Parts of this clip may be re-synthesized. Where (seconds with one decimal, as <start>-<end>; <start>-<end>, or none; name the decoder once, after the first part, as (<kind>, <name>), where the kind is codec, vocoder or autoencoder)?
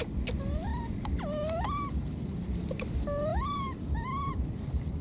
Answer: none